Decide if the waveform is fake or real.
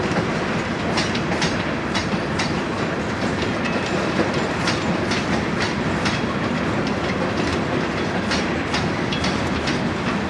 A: real